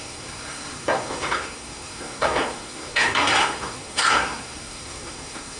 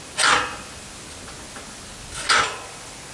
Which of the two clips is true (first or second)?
second